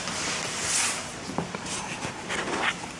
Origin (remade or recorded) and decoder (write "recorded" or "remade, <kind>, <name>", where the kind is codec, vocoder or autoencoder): recorded